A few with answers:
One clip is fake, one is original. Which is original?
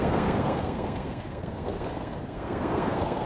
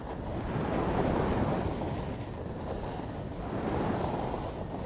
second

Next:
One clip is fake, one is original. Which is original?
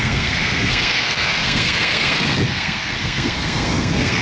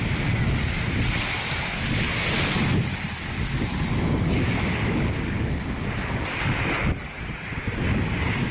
second